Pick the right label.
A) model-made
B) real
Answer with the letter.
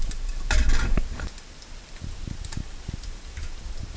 B